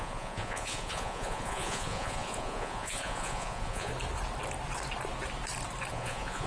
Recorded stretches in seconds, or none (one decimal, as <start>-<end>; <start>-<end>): 3.9-5.9